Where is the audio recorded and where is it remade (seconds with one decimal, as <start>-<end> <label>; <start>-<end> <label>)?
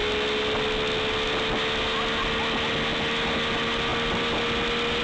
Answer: 0.0-5.0 recorded